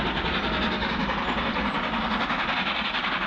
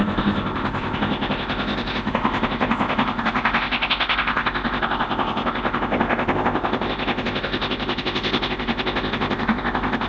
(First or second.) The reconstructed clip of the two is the second